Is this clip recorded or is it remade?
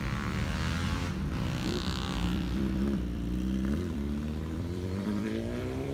remade